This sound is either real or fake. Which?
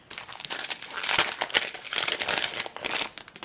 real